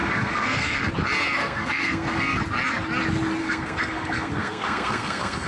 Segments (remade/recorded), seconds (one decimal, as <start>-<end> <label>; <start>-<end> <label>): 0.0-0.9 remade; 0.9-1.4 recorded; 1.4-2.4 remade; 2.4-3.4 recorded; 3.4-5.5 remade